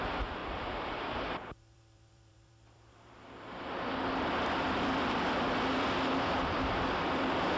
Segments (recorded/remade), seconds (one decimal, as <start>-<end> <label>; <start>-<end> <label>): 0.0-7.6 remade